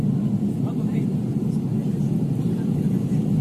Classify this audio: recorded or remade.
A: recorded